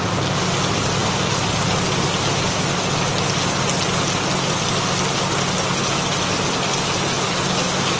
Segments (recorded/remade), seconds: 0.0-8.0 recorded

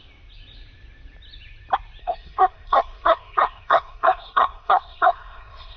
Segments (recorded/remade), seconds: 0.0-2.0 recorded; 2.0-5.8 remade

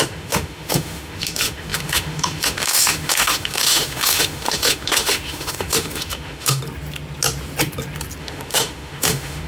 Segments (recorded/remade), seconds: 0.0-6.6 remade; 6.6-8.2 recorded; 8.2-9.5 remade

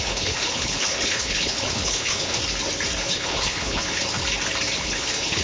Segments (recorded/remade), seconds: 0.0-2.4 remade; 2.4-3.0 recorded; 3.0-4.2 remade; 4.2-4.8 recorded; 4.8-5.4 remade